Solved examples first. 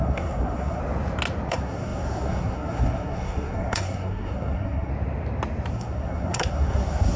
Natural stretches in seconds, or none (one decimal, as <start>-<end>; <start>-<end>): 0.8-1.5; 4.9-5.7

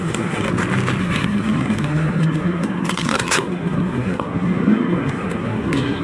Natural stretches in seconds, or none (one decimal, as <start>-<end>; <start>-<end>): 0.5-1.0

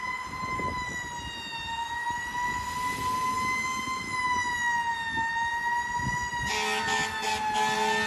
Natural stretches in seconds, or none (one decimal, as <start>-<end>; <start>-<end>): 0.0-8.1

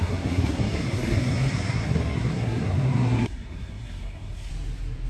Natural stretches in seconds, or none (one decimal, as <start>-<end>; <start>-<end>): 4.5-5.1

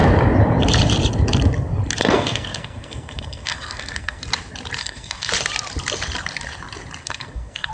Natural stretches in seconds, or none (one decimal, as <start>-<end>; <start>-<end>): 0.0-2.0; 4.2-4.8; 5.3-7.0